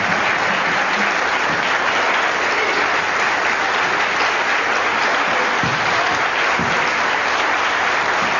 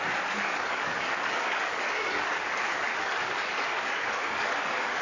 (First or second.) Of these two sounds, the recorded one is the first